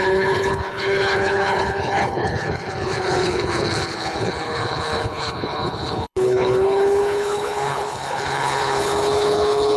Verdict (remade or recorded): remade